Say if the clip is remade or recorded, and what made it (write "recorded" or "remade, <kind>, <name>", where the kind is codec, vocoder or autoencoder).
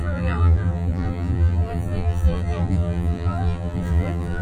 remade, vocoder, BigVGAN v2